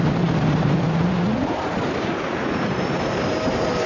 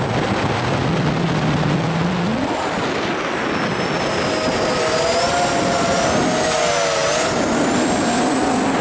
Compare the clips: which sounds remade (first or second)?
first